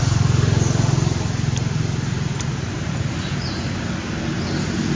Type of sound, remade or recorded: recorded